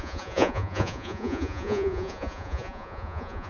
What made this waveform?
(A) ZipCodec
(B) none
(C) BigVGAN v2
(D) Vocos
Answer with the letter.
D